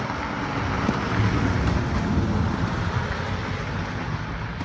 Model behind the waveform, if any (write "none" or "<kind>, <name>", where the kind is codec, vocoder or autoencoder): none